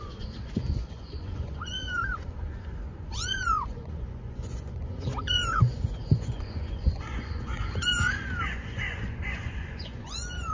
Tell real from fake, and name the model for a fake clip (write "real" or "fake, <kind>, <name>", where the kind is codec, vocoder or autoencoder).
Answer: fake, vocoder, Vocos